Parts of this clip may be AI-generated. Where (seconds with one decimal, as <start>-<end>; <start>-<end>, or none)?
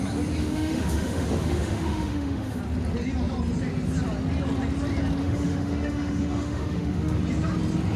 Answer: 0.4-2.6; 5.2-7.2